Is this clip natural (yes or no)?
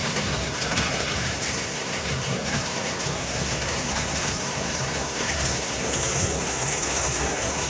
no